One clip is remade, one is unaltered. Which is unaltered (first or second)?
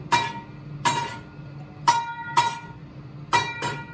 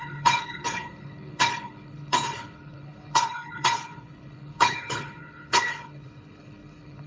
first